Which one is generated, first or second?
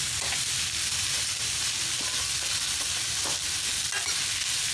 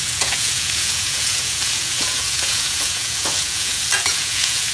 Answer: second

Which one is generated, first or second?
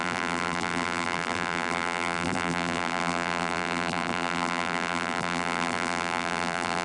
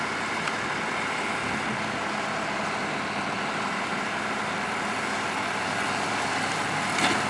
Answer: first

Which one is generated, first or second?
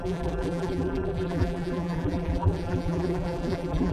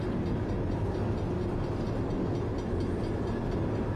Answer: first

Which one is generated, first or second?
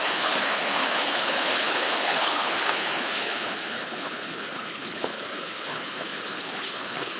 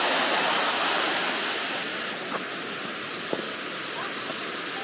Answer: first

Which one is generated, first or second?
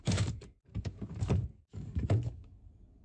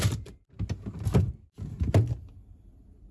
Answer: first